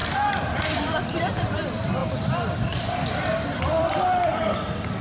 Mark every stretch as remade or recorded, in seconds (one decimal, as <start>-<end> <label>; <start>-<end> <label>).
0.0-1.2 recorded; 1.2-5.0 remade